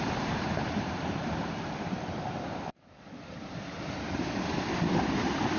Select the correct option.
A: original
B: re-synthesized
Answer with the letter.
B